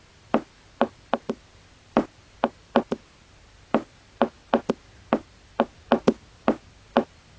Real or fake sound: real